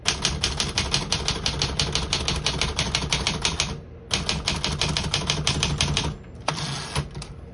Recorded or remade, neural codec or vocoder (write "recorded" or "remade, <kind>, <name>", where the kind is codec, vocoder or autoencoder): recorded